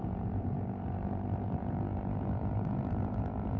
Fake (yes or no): yes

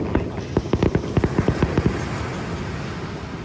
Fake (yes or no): no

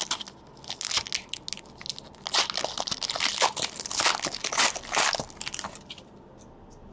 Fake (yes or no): no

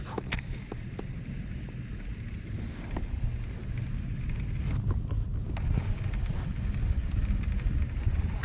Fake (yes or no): no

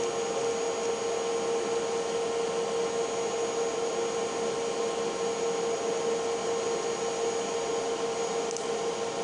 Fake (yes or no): no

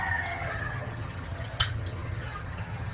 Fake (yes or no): yes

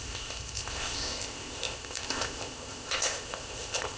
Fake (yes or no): yes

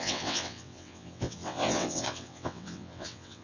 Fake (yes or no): yes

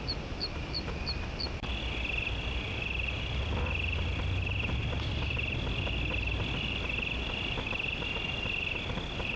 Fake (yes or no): no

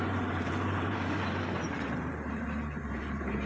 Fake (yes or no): yes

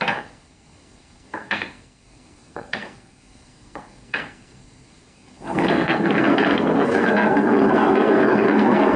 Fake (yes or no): yes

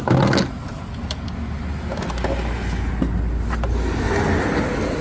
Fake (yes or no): no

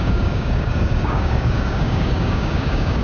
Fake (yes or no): yes